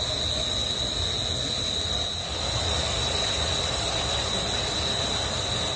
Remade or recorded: recorded